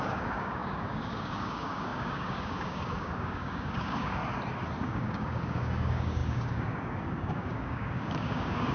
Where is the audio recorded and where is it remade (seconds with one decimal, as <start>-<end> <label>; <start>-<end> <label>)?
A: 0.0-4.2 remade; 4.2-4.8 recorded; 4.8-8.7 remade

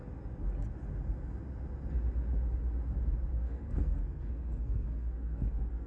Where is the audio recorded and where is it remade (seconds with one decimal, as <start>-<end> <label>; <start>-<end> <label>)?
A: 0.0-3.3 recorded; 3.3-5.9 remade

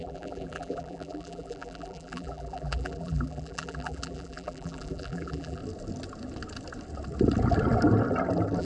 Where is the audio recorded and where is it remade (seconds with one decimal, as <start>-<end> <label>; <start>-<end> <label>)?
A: 0.0-5.6 remade; 5.6-8.6 recorded

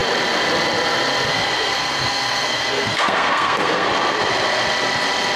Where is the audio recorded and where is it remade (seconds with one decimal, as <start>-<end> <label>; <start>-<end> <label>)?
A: 0.0-1.3 recorded; 1.3-3.9 remade; 3.9-5.4 recorded